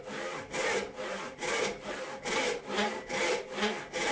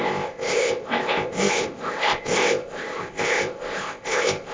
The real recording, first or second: first